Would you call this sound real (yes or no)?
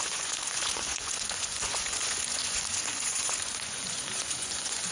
no